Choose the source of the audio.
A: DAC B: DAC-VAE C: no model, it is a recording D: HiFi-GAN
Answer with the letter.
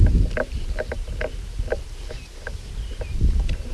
C